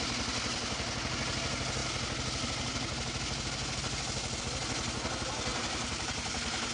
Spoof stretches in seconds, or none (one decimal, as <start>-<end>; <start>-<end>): 5.5-6.1